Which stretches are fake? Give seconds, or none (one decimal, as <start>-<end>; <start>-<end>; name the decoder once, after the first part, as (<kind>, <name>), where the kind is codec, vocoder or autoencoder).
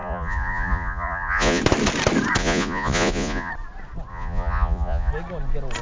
0.0-1.6 (vocoder, Vocos); 2.4-3.5; 4.1-5.1